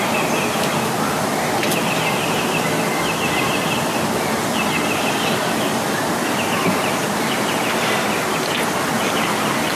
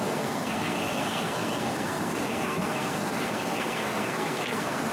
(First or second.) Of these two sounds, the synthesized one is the second